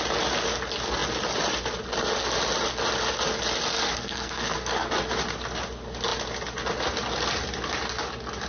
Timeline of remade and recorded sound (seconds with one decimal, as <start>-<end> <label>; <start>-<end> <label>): 0.0-3.7 recorded; 3.7-4.9 remade; 4.9-8.5 recorded